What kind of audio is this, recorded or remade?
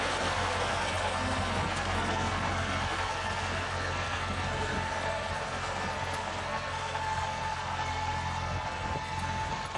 remade